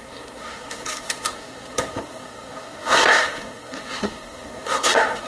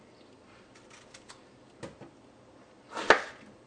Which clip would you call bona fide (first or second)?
second